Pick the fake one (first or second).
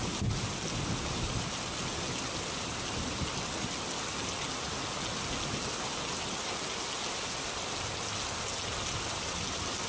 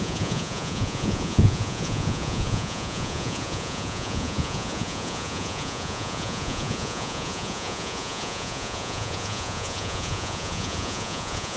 second